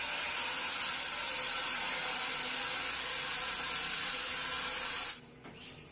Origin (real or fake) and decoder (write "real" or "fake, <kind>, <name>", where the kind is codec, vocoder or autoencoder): real